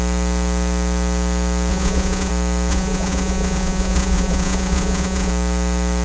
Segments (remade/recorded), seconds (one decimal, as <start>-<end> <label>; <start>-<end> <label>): 0.0-1.7 recorded; 1.7-2.3 remade; 2.3-2.7 recorded; 2.7-5.3 remade; 5.3-6.0 recorded

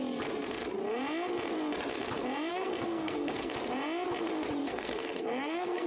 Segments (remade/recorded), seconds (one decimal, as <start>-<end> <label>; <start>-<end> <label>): 0.0-2.5 recorded; 2.5-3.5 remade; 3.5-4.6 recorded; 4.6-5.9 remade